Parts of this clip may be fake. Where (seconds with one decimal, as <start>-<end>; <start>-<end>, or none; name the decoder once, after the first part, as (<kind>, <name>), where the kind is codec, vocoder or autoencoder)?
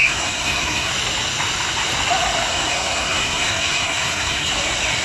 0.0-0.9 (codec, SNAC); 2.5-4.5